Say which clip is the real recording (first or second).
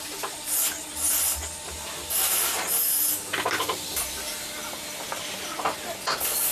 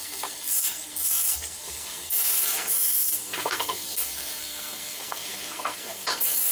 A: first